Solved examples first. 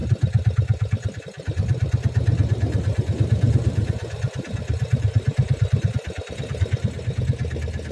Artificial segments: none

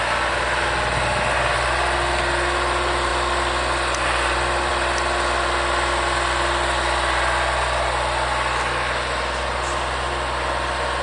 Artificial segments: none

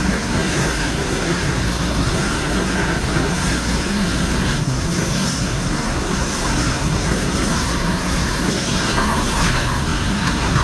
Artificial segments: 0.0-10.6 (codec, SNAC)

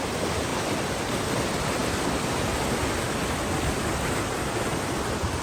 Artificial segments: none

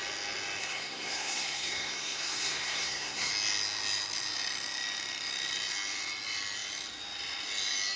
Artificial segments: 0.6-3.3 (codec, SNAC)

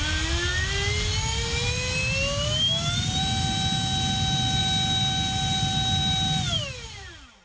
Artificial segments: none

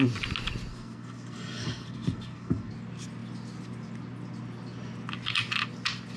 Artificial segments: 0.7-2.7 (codec, SNAC)